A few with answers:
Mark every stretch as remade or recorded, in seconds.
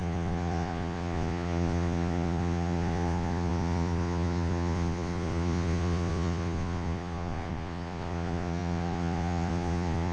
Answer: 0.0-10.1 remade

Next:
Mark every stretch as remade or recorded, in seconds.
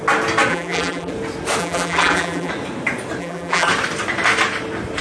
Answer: 0.0-0.5 recorded; 0.5-1.1 remade; 1.1-1.6 recorded; 1.6-2.5 remade; 2.5-3.2 recorded; 3.2-3.7 remade; 3.7-5.0 recorded